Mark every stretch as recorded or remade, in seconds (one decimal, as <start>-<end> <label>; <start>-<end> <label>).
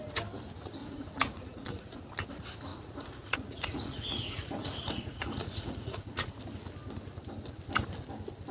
0.0-0.8 recorded; 0.8-2.0 remade; 2.0-2.7 recorded; 2.7-6.4 remade; 6.4-8.5 recorded